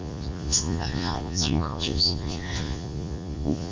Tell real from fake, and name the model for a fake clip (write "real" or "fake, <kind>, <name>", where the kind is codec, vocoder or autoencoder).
fake, vocoder, Vocos